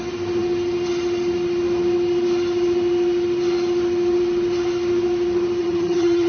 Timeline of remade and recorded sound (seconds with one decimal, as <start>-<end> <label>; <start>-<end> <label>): 0.0-5.6 recorded; 5.6-6.3 remade